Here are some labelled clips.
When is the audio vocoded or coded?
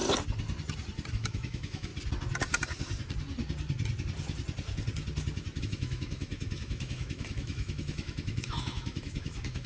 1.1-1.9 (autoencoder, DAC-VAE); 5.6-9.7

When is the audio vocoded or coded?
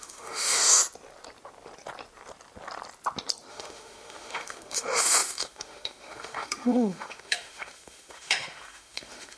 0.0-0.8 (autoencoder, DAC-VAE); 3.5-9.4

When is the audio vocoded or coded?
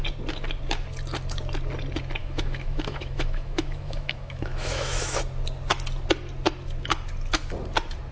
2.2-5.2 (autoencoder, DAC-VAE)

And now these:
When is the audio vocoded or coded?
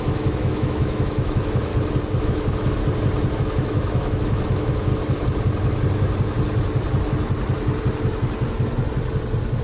0.0-1.7 (autoencoder, DAC-VAE); 2.2-2.8; 3.4-4.9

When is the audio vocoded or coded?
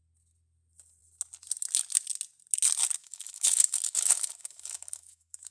3.0-5.5 (autoencoder, DAC-VAE)